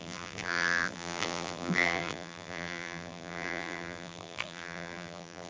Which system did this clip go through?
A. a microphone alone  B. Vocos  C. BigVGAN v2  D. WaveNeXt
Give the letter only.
C